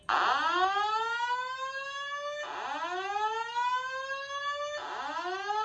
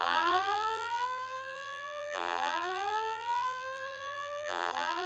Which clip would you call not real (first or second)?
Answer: second